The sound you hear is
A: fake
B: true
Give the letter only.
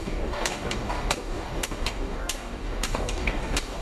A